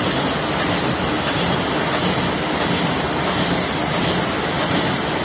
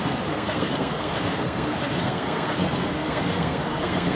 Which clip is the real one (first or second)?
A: first